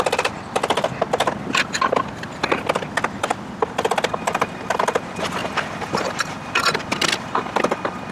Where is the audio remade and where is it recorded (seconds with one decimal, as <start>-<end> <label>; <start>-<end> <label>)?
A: 0.0-8.1 recorded